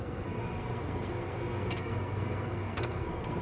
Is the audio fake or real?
fake